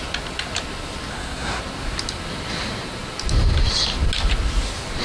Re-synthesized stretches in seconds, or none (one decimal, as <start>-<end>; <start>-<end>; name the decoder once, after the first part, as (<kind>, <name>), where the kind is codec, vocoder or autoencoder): 1.1-1.6 (codec, SNAC)